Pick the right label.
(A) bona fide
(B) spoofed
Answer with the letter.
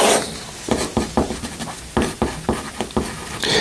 A